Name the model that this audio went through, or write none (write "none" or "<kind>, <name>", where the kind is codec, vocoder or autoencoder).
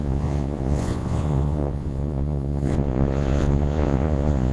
vocoder, Vocos